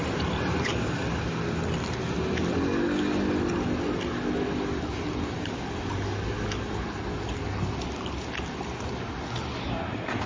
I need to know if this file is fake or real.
real